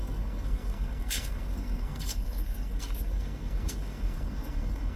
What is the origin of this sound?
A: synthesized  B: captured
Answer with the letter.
A